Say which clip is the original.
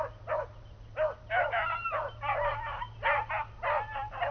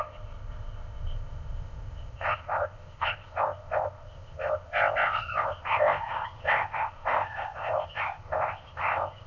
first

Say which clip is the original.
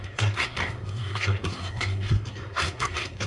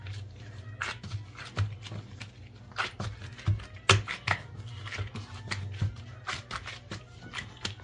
second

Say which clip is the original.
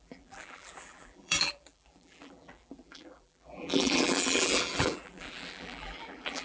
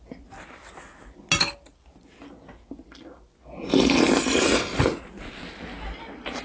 second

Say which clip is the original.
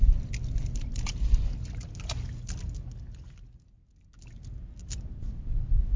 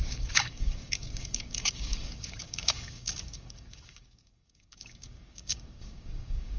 first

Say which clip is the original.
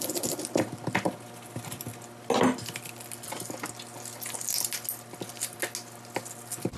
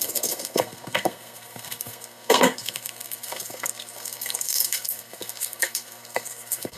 first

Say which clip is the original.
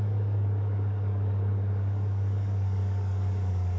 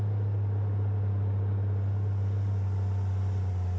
second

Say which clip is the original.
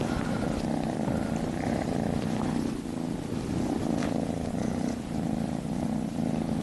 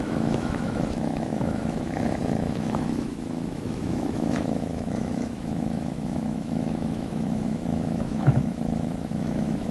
first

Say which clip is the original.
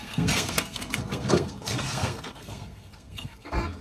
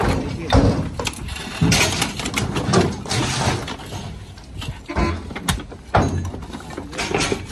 second